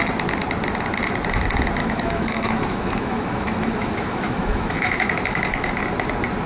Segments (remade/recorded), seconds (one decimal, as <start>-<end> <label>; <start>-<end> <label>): 0.0-1.8 recorded; 1.8-5.7 remade; 5.7-6.5 recorded